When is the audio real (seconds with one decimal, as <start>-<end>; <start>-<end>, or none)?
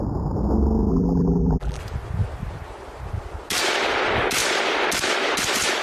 0.0-0.9; 1.8-5.8